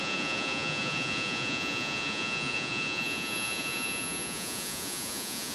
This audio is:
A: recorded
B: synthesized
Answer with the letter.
B